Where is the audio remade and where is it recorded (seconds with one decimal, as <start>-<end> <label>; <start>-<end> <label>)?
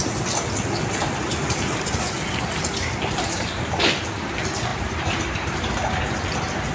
0.0-4.7 recorded; 4.7-6.0 remade; 6.0-6.7 recorded